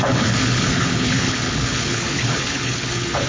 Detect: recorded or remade remade